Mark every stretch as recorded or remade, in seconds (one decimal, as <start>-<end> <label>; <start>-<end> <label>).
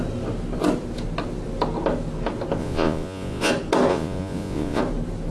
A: 0.0-2.6 recorded; 2.6-3.5 remade; 3.5-3.9 recorded; 3.9-4.8 remade; 4.8-5.3 recorded